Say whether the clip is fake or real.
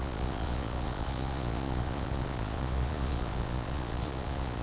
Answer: fake